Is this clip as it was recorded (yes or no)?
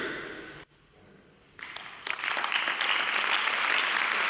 yes